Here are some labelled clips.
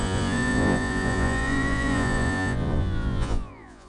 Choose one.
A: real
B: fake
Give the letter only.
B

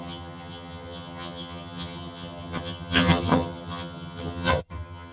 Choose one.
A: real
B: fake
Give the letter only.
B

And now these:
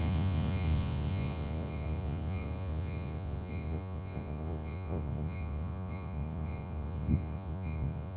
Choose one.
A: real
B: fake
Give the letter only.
B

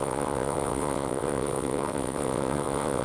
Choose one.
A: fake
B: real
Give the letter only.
A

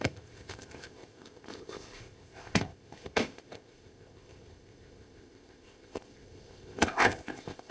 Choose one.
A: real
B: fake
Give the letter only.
B